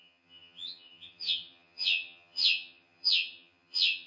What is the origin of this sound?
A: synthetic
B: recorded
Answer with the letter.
A